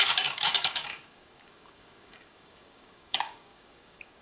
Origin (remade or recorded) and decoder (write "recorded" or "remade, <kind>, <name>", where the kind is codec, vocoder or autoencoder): remade, codec, DAC